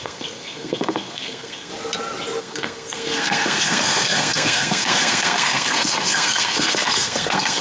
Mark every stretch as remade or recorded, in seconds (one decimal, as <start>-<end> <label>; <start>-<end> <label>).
0.0-1.7 remade; 1.7-2.4 recorded; 2.4-7.6 remade